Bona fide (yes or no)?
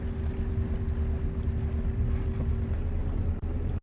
yes